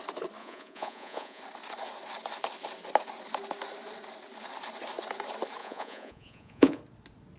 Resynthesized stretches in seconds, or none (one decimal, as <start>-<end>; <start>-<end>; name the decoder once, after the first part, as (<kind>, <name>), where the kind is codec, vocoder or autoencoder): 0.4-1.4 (vocoder, Vocos); 5.6-6.8